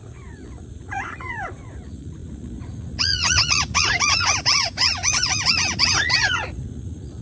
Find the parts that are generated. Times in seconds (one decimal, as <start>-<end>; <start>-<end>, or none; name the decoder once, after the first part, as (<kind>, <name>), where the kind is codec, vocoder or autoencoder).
0.0-7.2 (vocoder, Vocos)